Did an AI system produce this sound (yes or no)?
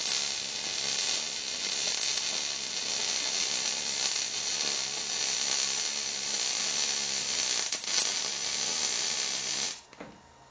no